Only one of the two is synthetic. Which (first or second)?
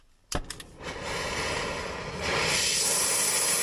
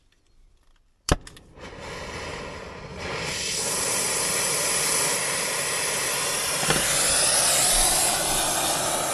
second